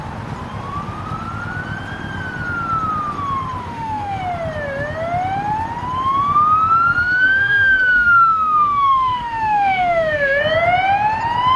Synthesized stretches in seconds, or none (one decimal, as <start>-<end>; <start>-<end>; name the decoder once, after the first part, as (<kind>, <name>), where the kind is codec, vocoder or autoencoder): 3.6-4.2 (autoencoder, DAC-VAE); 7.0-10.4